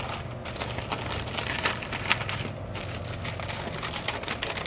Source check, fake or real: real